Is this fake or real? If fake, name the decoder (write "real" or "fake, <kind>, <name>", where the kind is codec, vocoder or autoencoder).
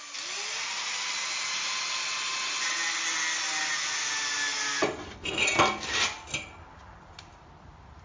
real